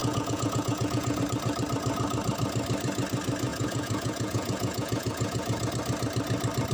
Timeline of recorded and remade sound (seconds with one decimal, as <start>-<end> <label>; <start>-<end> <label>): 0.0-1.2 remade; 1.2-3.5 recorded; 3.5-5.7 remade; 5.7-6.7 recorded